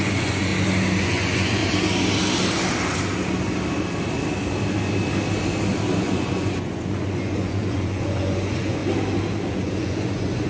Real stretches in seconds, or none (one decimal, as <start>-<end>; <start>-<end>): 0.5-1.0; 1.6-6.0; 8.8-9.5